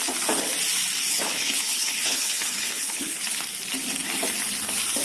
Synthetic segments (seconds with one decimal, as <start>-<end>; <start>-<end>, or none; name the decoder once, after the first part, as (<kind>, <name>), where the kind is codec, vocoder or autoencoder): 1.1-3.2 (codec, HILCodec)

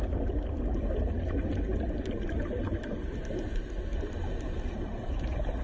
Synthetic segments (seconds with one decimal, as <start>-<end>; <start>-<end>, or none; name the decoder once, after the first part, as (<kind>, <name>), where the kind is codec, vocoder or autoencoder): none

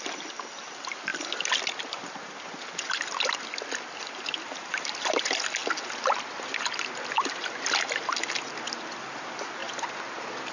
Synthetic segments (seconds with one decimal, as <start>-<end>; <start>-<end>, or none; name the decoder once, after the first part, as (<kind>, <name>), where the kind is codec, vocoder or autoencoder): none

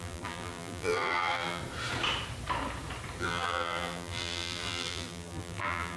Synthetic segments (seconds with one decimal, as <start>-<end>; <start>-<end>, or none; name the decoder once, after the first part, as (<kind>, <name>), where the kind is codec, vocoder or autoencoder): 0.0-1.6 (vocoder, BigVGAN v2); 3.2-6.0

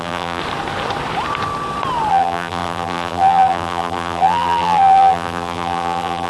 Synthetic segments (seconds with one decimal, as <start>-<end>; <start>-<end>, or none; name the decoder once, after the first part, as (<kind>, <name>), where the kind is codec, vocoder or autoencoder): 0.0-0.4 (vocoder, BigVGAN v2); 2.1-6.3

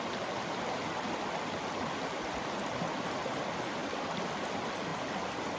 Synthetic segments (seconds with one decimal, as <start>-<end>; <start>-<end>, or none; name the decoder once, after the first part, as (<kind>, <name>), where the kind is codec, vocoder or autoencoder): none

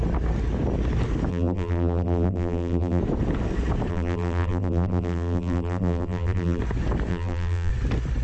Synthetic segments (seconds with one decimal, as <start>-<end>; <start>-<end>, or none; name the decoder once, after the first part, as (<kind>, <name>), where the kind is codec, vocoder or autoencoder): 1.3-3.0 (vocoder, BigVGAN v2); 3.9-6.6; 7.1-7.7

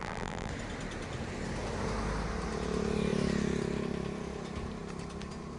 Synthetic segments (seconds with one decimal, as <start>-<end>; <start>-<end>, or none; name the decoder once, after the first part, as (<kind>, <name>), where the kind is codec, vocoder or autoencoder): 0.0-0.5 (vocoder, BigVGAN v2)